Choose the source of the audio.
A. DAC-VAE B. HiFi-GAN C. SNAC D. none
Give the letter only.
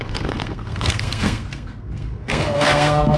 C